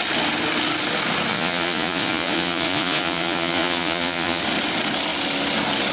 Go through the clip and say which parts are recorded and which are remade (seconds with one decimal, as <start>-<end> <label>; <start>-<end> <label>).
0.0-1.3 recorded; 1.3-4.4 remade; 4.4-5.9 recorded